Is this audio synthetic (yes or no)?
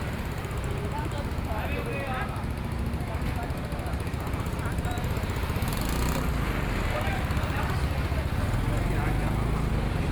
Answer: no